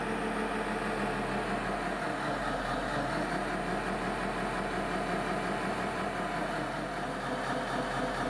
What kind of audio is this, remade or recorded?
recorded